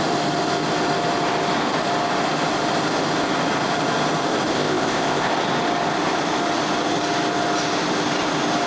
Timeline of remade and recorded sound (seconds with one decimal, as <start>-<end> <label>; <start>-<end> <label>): 0.0-4.5 recorded; 4.5-5.3 remade; 5.3-8.7 recorded